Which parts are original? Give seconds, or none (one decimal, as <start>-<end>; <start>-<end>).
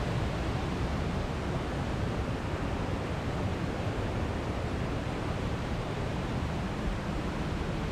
0.0-3.5; 7.0-7.9